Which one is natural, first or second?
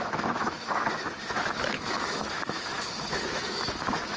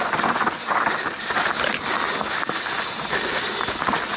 second